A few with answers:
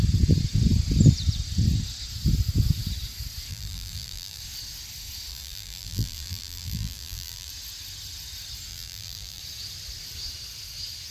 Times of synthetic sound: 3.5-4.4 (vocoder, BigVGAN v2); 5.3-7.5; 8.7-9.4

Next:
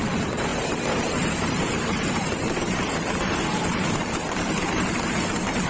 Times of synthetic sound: 0.0-5.7 (vocoder, BigVGAN v2)

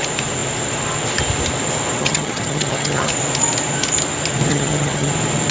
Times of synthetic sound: 2.0-3.1 (vocoder, HiFi-GAN); 4.5-5.1

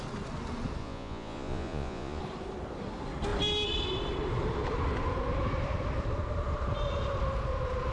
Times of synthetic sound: 0.8-2.2 (vocoder, Vocos)